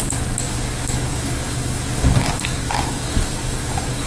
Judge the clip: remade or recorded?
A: remade